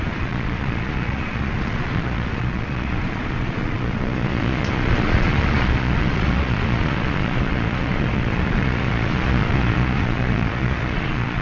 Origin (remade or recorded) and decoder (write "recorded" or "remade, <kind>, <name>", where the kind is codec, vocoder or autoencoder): remade, vocoder, Vocos